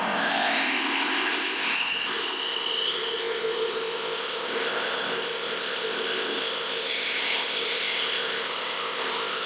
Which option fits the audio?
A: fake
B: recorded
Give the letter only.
A